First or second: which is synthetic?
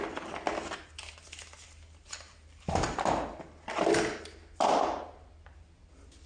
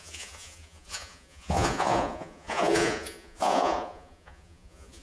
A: second